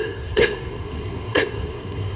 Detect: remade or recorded remade